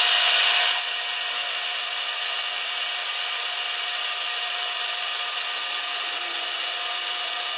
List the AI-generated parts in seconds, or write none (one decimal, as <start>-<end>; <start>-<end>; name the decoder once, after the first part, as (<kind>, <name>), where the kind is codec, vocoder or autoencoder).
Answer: none